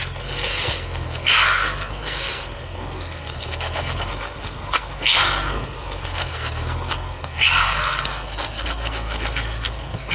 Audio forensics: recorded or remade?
remade